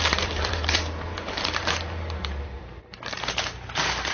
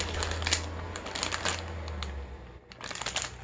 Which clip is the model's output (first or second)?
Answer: first